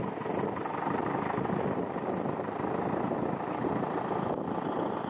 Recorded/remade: remade